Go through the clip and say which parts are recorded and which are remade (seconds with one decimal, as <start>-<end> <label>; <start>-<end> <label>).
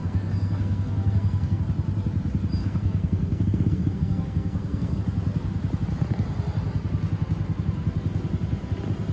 0.0-1.6 remade; 1.6-2.6 recorded; 2.6-5.0 remade; 5.0-9.1 recorded